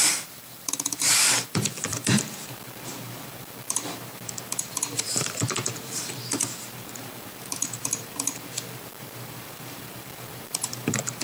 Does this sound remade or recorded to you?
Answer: remade